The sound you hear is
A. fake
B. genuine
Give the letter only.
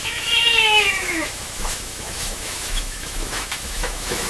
A